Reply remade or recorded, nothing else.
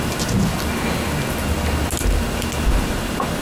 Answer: recorded